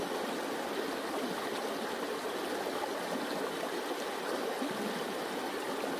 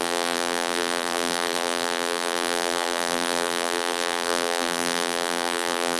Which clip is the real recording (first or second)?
first